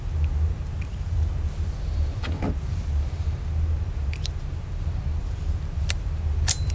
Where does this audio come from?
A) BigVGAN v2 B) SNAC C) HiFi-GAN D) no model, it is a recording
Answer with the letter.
A